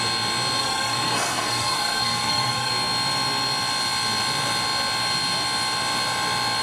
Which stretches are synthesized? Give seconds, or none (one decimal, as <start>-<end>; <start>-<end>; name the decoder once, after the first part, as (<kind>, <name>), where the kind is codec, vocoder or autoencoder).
0.6-2.7 (codec, SNAC)